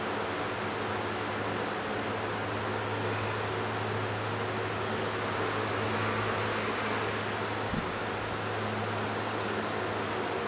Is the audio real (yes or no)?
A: yes